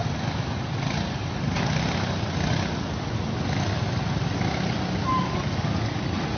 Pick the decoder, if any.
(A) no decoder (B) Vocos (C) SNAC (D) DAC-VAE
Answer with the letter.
A